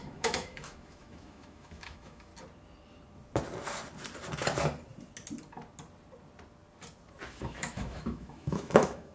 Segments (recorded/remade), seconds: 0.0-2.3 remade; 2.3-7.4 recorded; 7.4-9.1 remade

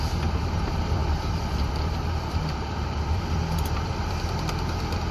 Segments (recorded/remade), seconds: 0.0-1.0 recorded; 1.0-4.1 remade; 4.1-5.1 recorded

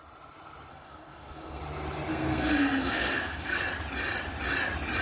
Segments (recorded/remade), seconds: 0.0-0.7 recorded; 0.7-1.6 remade; 1.6-2.1 recorded; 2.1-3.6 remade; 3.6-5.0 recorded

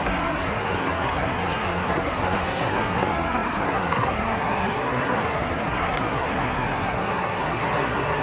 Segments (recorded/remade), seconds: 0.0-8.2 remade